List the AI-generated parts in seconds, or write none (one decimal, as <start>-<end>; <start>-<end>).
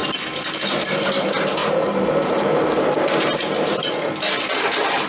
1.6-3.9